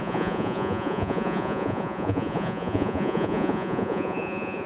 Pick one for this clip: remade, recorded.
remade